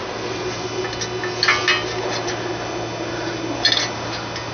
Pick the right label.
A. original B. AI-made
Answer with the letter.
A